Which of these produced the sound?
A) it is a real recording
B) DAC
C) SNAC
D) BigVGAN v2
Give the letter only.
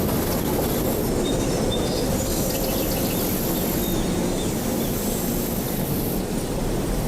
A